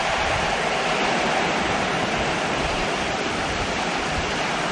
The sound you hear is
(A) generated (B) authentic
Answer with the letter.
B